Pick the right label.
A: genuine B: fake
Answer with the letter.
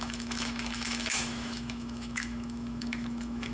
B